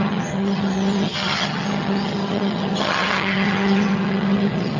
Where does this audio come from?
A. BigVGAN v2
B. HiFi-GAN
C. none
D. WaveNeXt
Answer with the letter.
B